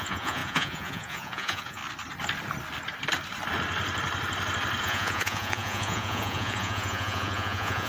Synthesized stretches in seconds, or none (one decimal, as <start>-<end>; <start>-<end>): 0.0-1.8; 4.8-7.9